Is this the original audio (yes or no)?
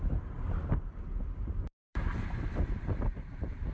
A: no